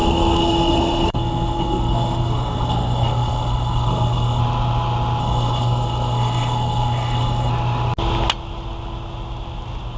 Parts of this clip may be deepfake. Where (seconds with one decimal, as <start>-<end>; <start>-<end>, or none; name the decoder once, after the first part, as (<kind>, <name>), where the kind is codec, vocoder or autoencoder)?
0.0-4.4 (codec, SNAC); 5.2-7.5